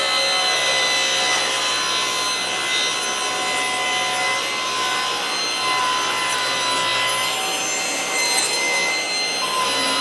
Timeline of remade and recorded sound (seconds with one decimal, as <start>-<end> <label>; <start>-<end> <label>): 0.0-10.0 recorded